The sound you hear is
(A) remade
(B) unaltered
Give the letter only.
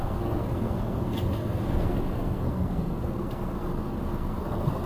A